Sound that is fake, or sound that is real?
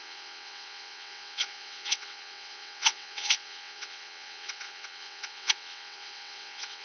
fake